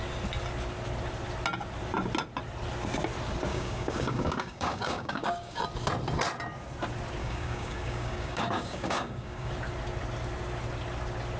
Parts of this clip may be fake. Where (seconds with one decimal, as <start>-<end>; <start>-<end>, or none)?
3.5-5.6; 7.2-9.5

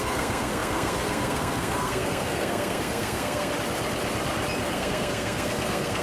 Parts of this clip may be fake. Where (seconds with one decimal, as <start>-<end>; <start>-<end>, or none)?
0.0-3.5; 4.7-6.0

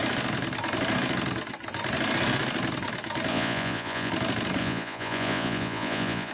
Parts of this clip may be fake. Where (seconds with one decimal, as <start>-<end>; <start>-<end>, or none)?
3.3-4.1; 4.6-6.3

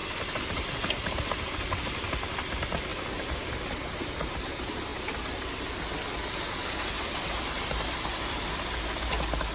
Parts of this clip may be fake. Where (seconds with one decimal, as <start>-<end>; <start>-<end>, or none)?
0.7-4.9; 7.0-9.5

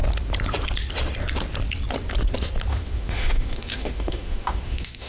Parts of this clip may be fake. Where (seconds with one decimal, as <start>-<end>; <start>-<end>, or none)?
2.7-5.1

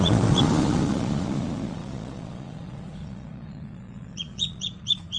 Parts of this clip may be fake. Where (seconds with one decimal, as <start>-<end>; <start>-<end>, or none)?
0.0-5.2

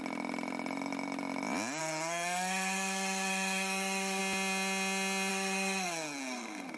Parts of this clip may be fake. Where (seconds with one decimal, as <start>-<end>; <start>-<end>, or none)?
1.8-4.2; 5.3-6.8